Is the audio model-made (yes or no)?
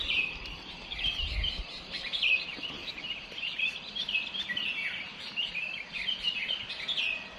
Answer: no